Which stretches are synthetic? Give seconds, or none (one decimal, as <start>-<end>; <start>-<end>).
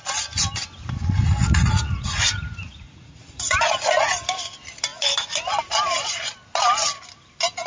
1.4-3.3